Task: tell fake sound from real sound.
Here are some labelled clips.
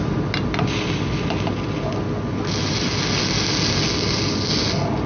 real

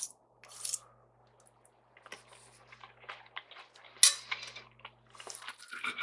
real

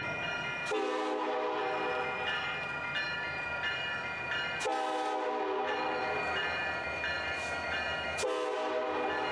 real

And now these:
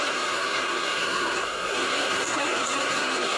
fake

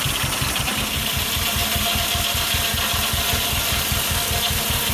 real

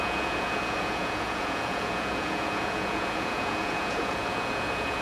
fake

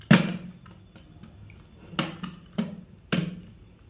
real